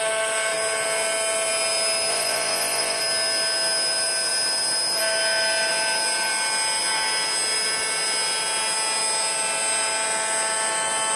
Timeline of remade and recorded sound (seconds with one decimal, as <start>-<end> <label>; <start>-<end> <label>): 0.0-2.1 recorded; 2.1-3.0 remade; 3.0-11.2 recorded